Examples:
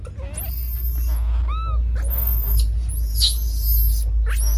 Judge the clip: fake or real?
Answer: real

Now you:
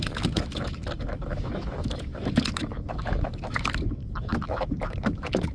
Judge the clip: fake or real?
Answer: fake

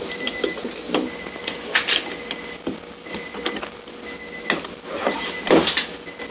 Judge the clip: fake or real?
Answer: real